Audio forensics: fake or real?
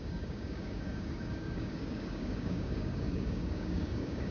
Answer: fake